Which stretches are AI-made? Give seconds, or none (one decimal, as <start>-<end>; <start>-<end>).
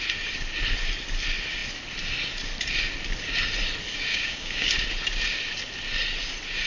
4.1-4.7